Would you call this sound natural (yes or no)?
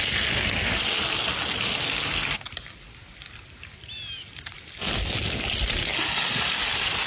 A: yes